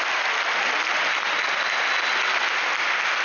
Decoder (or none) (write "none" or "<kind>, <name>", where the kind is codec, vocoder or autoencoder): none